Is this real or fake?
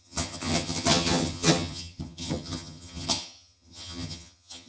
fake